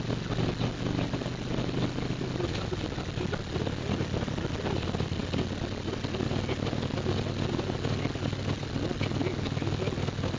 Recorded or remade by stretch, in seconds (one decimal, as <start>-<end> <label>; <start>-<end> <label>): 0.0-10.4 recorded